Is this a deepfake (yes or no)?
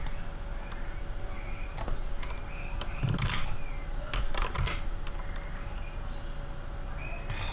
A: no